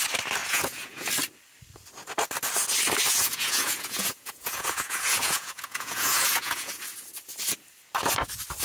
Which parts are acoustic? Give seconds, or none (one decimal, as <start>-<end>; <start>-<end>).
0.0-0.4; 1.1-3.1; 6.8-8.6